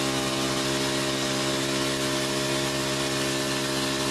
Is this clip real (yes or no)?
yes